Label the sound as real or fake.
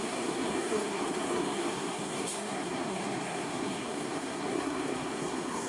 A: fake